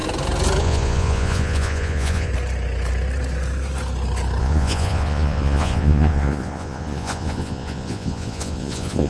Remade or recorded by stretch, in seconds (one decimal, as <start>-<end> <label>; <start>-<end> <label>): 0.0-0.6 recorded; 0.6-2.3 remade; 2.3-4.4 recorded; 4.4-9.1 remade